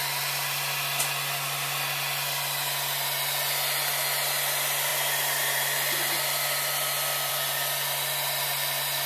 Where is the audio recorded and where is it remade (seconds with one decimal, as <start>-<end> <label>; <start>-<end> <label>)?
0.0-9.1 recorded